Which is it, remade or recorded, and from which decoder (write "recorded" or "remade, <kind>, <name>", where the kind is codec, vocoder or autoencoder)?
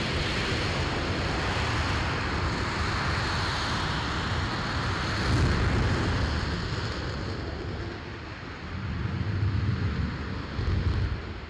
recorded